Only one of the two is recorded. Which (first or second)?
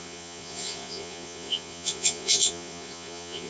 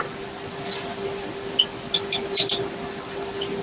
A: second